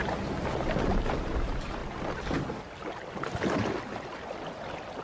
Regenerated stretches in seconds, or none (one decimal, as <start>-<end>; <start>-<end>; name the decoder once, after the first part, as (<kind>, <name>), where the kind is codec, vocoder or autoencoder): none